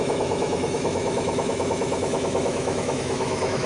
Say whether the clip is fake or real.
fake